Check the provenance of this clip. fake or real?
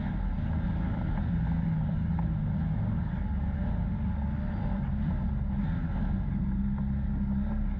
real